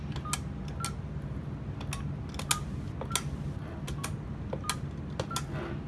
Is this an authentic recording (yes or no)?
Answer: yes